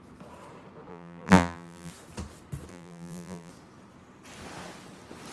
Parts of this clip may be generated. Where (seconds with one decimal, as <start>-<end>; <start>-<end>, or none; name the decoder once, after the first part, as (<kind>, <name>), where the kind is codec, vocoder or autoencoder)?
0.9-1.9 (vocoder, BigVGAN v2); 2.7-3.5